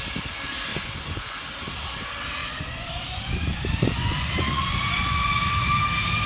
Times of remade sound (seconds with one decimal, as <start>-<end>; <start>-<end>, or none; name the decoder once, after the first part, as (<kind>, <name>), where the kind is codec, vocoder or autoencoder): 0.7-1.4 (vocoder, Vocos); 2.4-5.5